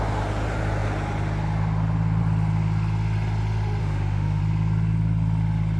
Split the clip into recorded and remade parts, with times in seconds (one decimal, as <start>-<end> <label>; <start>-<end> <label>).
0.0-3.8 recorded; 3.8-4.4 remade; 4.4-5.8 recorded